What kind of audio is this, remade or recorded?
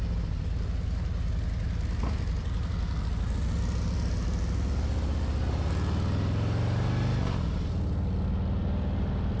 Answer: recorded